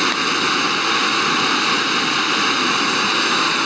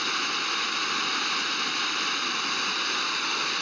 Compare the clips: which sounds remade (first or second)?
second